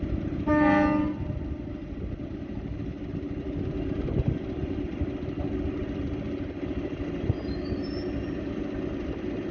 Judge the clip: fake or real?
real